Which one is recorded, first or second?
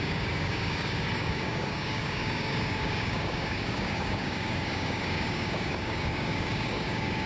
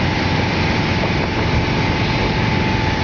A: second